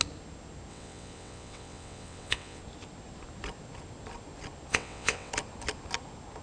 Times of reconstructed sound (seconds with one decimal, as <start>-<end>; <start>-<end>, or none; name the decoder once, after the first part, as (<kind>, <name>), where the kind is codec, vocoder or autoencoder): 0.7-2.6 (vocoder, WaveNeXt); 4.7-5.3